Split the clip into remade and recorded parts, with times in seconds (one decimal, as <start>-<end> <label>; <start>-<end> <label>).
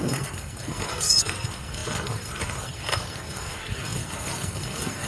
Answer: 0.0-5.1 remade